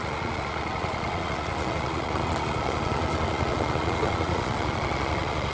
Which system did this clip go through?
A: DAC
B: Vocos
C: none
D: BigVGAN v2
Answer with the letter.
B